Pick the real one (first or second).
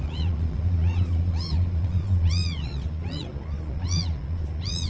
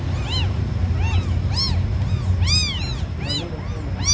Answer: second